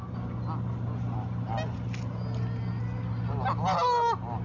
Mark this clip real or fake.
real